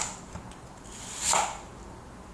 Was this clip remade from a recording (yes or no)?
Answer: no